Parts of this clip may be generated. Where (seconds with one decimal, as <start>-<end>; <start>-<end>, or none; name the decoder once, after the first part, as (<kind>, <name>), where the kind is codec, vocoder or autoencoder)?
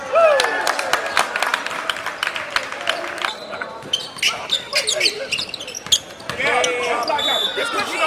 none